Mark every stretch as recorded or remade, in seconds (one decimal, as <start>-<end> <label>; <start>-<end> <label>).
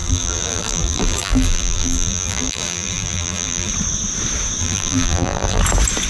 0.0-3.7 remade; 3.7-4.6 recorded; 4.6-5.6 remade; 5.6-6.1 recorded